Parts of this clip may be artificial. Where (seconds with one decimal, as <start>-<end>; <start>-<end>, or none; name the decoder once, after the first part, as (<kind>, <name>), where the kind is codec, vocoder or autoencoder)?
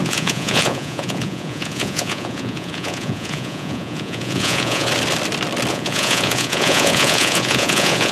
0.0-4.9 (vocoder, Vocos); 5.7-8.1